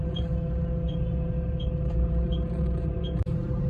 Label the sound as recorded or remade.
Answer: recorded